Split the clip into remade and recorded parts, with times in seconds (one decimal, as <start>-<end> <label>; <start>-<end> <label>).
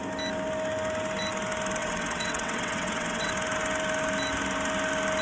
0.0-1.8 recorded; 1.8-3.3 remade; 3.3-5.2 recorded